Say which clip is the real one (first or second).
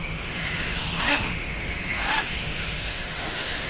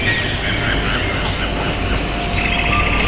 second